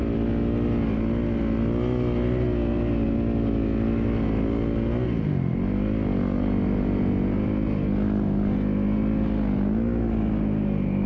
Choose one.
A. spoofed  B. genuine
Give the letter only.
B